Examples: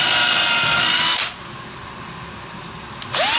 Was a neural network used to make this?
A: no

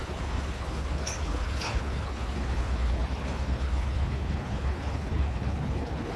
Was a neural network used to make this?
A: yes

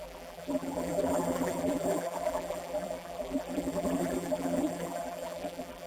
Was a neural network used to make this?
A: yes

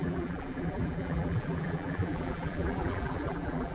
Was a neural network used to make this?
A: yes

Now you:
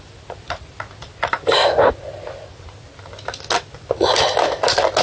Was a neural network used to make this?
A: no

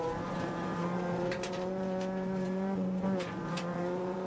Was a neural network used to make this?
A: yes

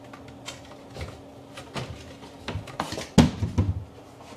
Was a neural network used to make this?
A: no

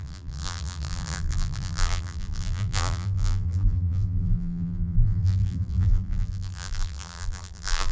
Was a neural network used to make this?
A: yes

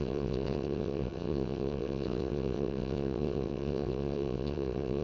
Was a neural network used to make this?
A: yes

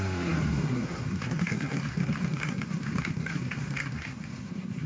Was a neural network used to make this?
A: yes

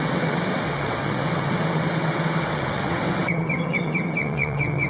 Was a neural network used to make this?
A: yes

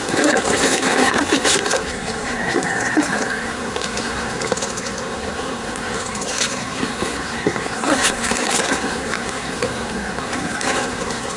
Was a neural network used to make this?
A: yes